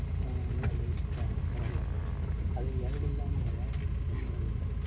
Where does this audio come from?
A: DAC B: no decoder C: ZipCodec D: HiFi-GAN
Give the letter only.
B